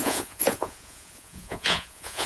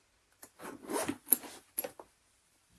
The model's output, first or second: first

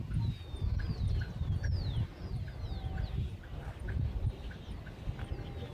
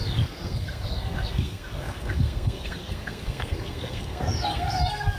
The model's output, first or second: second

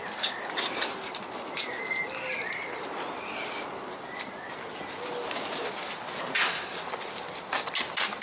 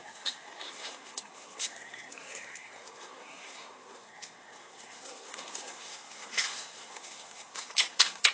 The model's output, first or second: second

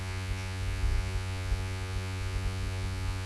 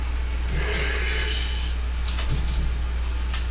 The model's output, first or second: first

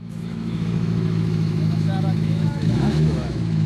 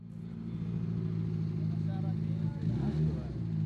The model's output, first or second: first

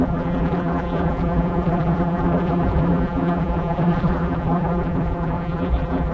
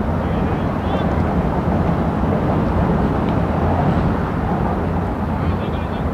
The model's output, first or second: first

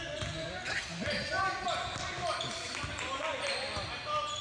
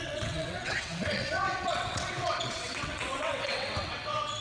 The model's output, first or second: second